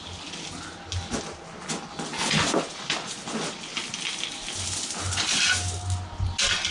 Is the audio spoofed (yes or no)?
no